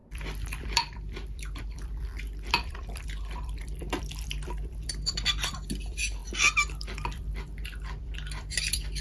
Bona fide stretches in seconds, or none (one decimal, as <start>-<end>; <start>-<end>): 6.2-6.8